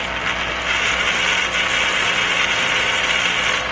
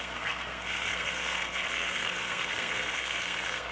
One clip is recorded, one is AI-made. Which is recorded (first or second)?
first